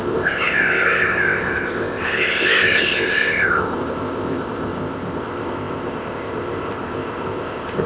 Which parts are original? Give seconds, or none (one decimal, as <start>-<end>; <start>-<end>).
none